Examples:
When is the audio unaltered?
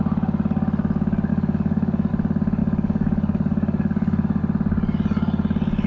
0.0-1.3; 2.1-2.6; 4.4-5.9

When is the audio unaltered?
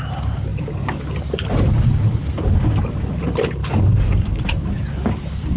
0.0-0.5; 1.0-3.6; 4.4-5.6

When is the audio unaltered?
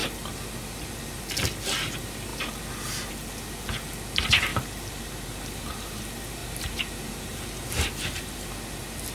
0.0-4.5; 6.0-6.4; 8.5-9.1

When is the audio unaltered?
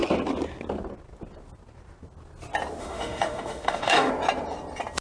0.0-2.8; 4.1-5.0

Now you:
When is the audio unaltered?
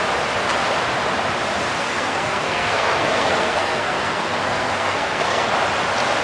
0.0-1.8; 5.5-6.2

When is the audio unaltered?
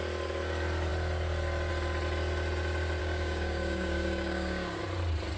0.0-3.0; 4.8-5.4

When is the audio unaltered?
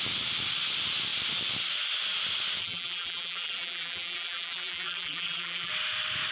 0.0-2.6; 5.7-6.3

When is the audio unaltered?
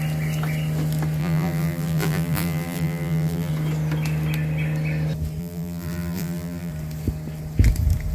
0.0-1.2; 3.5-5.4; 6.7-8.1